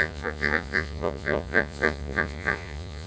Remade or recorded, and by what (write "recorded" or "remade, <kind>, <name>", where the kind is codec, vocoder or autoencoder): remade, vocoder, Vocos